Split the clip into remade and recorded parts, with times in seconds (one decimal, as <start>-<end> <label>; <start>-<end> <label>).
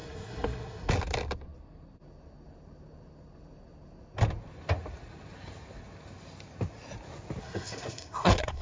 0.0-0.9 remade; 0.9-7.4 recorded; 7.4-8.6 remade